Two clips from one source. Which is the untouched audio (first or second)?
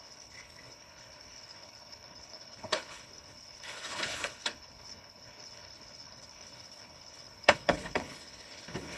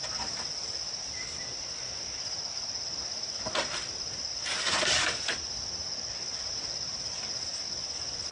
second